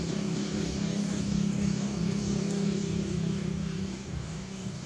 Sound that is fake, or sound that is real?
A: fake